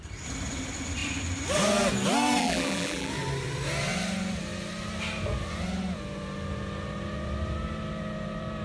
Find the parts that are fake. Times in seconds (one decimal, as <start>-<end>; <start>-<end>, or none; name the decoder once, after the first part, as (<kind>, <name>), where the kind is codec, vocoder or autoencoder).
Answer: 2.4-3.1 (vocoder, BigVGAN v2)